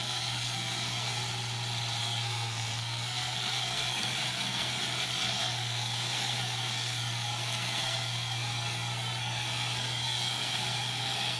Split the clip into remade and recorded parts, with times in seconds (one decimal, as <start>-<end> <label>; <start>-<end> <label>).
0.0-1.2 remade; 1.2-2.0 recorded; 2.0-11.4 remade